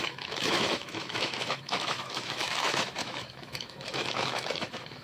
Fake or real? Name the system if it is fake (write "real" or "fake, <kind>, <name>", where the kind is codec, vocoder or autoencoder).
fake, autoencoder, DAC-VAE